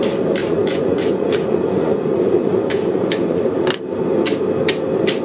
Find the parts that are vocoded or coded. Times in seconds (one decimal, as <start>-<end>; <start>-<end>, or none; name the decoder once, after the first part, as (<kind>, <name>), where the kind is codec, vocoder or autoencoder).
0.4-3.5 (vocoder, Vocos)